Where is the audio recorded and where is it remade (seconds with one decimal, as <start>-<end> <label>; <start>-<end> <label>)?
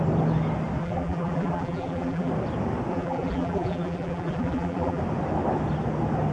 0.0-0.8 recorded; 0.8-2.3 remade; 2.3-2.9 recorded; 2.9-5.0 remade; 5.0-6.3 recorded